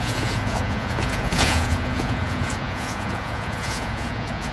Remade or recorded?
remade